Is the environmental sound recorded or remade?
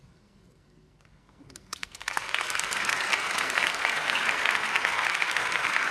remade